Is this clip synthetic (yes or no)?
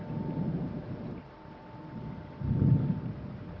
yes